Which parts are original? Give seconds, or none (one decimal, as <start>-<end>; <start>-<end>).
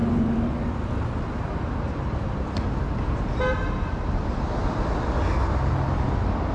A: 0.0-6.5